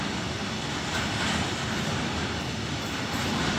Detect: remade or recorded recorded